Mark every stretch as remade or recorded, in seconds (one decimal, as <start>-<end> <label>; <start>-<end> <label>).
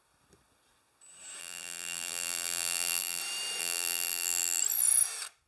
0.0-1.4 recorded; 1.4-3.2 remade; 3.2-3.6 recorded; 3.6-4.6 remade; 4.6-5.5 recorded